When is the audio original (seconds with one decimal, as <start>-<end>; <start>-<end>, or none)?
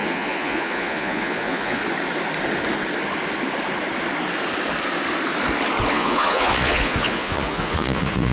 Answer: 1.8-5.9